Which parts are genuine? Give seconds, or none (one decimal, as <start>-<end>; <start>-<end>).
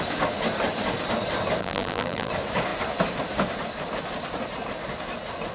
0.0-1.6; 2.3-5.5